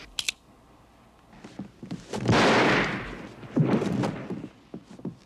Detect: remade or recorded recorded